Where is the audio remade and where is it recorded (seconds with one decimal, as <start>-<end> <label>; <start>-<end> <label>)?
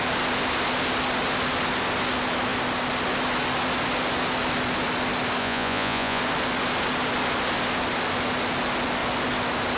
0.0-5.4 recorded; 5.4-6.2 remade; 6.2-9.8 recorded